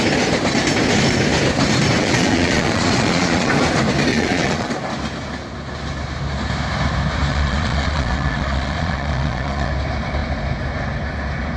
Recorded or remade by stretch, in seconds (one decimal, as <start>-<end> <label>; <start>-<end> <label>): 0.0-2.0 recorded; 2.0-3.5 remade; 3.5-4.1 recorded; 4.1-4.7 remade; 4.7-7.3 recorded; 7.3-9.7 remade; 9.7-11.6 recorded